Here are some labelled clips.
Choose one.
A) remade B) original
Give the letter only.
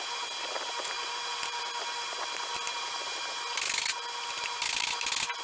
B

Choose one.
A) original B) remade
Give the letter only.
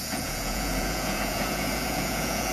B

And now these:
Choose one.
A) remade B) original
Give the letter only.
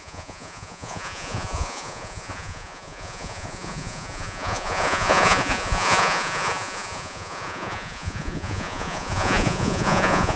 A